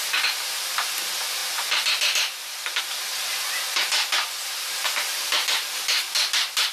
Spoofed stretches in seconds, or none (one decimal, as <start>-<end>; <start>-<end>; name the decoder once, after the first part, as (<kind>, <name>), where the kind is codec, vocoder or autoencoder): none

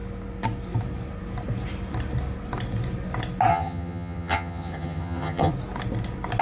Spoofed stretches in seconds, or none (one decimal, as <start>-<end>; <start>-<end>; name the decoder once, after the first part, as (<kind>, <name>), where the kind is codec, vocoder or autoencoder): 3.5-5.5 (vocoder, HiFi-GAN)

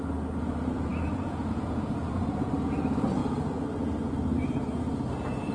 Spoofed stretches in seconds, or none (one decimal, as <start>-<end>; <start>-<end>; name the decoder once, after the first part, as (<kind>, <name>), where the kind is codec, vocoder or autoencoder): 0.9-2.5 (vocoder, Vocos)

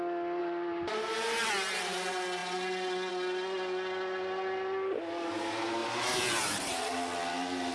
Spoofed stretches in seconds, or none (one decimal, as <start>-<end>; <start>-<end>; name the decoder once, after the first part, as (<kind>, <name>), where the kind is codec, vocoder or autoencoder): 0.4-1.5 (vocoder, BigVGAN v2); 5.8-6.8